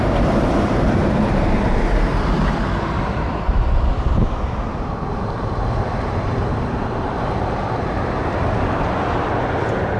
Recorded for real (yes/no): no